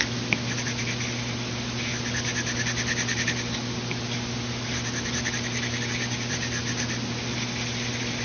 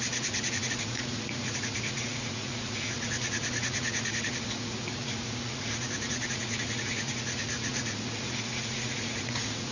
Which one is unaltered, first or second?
first